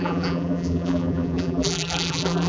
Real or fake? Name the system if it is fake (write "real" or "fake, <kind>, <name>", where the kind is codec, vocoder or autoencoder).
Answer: fake, vocoder, BigVGAN v2